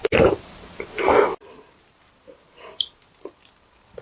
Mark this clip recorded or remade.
recorded